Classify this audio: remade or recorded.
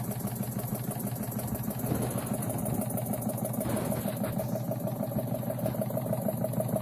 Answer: recorded